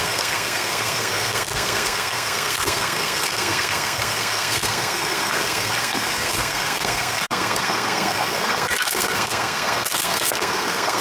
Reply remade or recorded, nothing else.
remade